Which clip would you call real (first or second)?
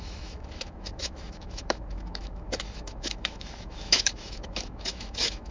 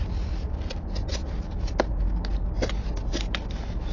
second